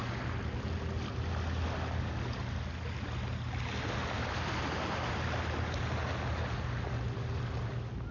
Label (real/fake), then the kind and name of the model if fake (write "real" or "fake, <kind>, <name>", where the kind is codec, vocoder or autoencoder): real